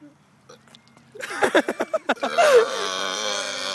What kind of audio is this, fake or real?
real